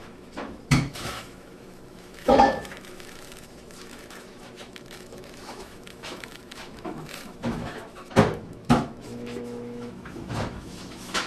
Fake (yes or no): yes